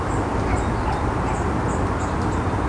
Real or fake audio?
real